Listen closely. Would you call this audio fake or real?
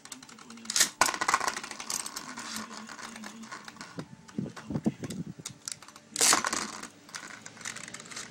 real